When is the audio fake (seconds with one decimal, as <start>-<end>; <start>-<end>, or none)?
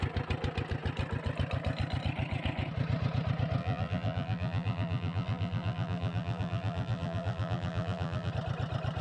3.6-8.3